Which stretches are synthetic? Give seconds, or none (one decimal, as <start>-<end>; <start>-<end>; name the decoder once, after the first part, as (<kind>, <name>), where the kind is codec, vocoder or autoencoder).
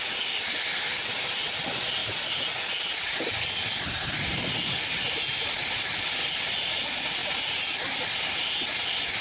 none